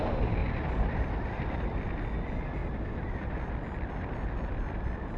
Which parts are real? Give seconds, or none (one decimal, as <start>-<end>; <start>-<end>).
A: 0.0-2.6; 3.4-5.2